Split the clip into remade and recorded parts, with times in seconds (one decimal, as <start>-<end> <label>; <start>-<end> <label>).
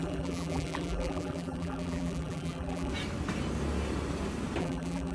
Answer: 0.0-2.9 remade; 2.9-4.6 recorded; 4.6-5.1 remade